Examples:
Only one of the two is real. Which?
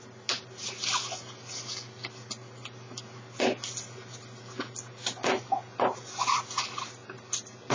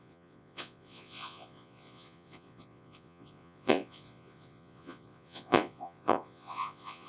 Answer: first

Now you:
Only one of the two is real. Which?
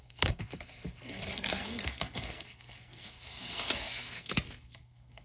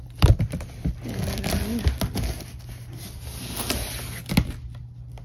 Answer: second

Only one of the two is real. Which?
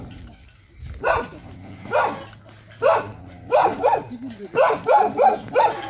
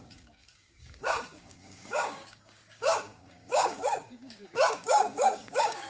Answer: first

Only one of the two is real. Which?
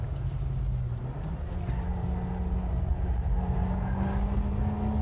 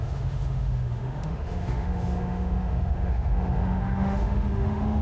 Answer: first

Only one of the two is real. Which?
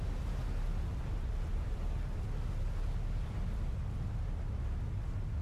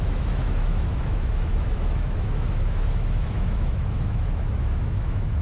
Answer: first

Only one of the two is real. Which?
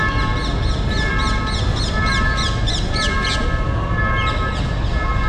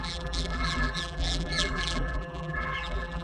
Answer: first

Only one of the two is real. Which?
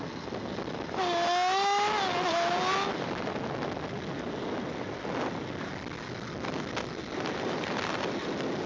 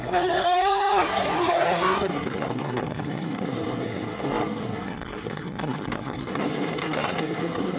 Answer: first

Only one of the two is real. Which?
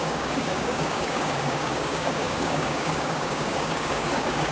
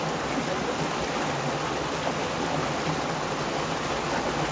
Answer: second